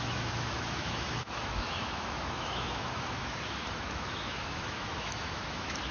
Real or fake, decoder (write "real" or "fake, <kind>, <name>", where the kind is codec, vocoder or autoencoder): fake, autoencoder, DAC-VAE